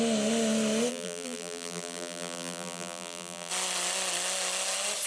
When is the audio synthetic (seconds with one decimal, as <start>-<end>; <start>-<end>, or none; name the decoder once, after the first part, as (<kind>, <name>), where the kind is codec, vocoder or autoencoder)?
0.9-3.5 (vocoder, BigVGAN v2)